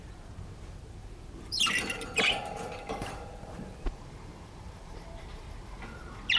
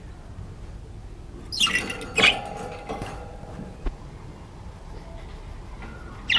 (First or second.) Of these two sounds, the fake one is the first